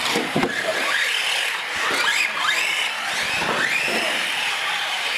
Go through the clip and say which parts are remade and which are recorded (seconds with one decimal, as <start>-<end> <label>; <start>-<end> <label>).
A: 0.0-0.7 remade; 0.7-3.8 recorded; 3.8-5.2 remade